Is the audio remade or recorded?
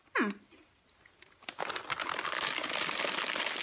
recorded